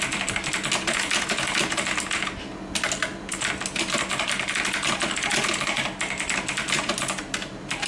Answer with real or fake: real